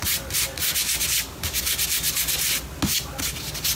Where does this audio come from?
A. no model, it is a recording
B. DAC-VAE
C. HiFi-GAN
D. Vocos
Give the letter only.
A